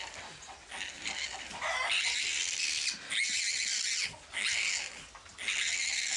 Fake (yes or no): no